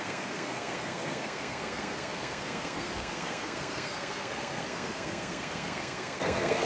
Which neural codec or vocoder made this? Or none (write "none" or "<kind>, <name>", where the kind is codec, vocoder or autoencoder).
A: codec, SNAC